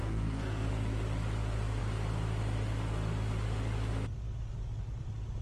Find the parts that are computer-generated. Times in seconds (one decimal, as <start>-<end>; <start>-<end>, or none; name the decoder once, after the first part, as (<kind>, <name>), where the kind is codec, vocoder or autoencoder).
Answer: 0.0-0.7 (codec, DAC)